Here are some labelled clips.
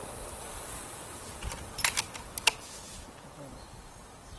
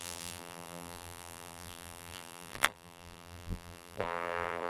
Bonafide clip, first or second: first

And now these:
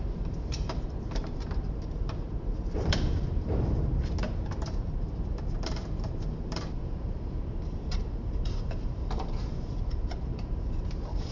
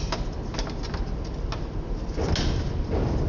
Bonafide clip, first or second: second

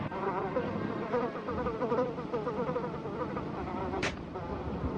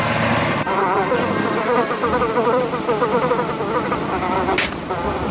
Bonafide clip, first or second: second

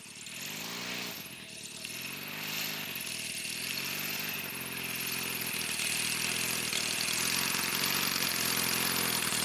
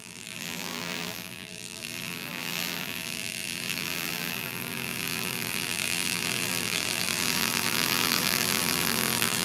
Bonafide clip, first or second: first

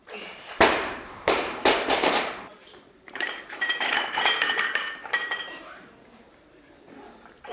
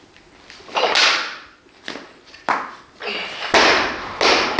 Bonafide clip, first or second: second